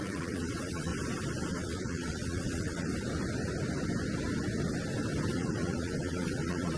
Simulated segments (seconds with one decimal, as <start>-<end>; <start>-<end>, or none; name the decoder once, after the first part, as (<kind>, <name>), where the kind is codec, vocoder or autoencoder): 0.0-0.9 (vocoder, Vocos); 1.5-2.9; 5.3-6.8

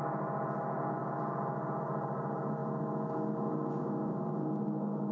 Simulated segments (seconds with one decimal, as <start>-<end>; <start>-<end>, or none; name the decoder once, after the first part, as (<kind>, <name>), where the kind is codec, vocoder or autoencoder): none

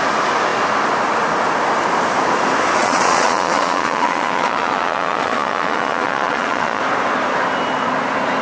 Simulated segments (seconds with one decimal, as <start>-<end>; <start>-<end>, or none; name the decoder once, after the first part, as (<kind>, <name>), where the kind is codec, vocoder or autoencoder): 2.8-6.8 (vocoder, Vocos)

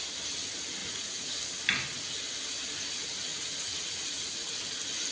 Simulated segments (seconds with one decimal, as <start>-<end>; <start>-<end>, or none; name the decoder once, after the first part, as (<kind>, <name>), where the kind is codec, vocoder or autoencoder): 0.8-1.4 (vocoder, Vocos); 3.3-4.5

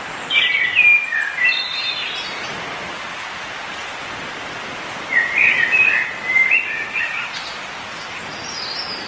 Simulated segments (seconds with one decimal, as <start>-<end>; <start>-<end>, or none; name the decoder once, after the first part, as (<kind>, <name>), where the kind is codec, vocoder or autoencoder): none

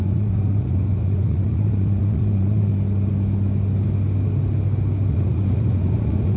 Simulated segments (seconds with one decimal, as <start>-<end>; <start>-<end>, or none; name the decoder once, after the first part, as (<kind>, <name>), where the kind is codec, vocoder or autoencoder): 0.0-2.7 (vocoder, Vocos); 5.1-6.4

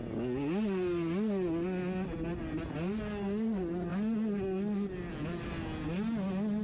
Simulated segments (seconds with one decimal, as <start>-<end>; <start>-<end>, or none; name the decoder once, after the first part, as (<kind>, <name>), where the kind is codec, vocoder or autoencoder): none

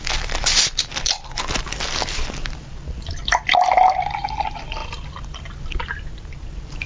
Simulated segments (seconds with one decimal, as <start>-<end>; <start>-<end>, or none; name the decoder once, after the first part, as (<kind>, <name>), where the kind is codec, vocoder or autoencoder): none